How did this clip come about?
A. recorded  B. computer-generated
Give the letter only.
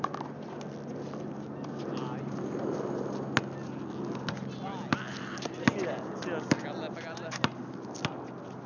A